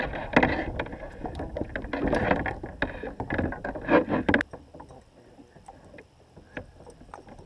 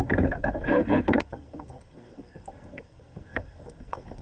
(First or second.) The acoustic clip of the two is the first